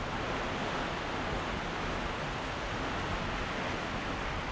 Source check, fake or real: real